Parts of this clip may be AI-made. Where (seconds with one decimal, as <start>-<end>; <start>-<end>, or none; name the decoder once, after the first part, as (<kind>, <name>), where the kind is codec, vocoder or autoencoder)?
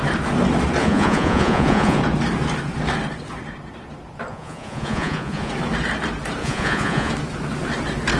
0.8-2.0 (vocoder, Vocos); 4.3-5.5; 6.4-7.1